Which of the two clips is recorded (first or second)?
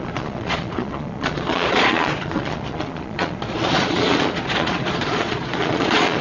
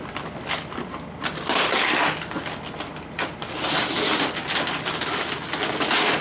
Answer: second